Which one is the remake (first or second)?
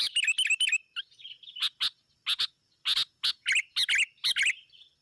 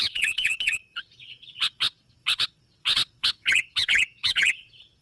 second